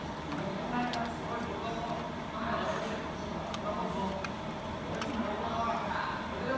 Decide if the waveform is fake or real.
real